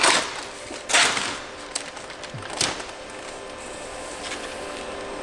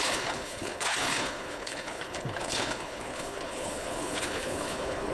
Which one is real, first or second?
first